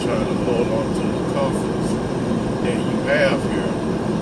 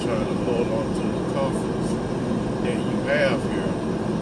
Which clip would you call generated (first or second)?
first